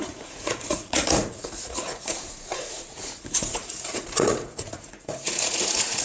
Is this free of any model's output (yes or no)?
no